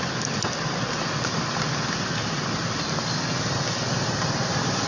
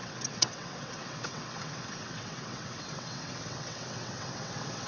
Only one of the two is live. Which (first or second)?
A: first